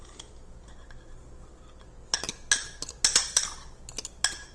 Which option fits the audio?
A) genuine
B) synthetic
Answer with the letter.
A